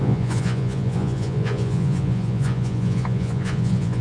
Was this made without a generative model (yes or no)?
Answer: no